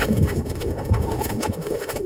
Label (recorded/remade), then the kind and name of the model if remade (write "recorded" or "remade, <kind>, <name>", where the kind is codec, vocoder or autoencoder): remade, autoencoder, DAC-VAE